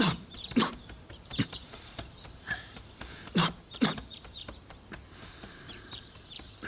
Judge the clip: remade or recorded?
remade